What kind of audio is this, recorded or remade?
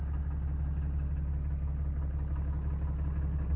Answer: recorded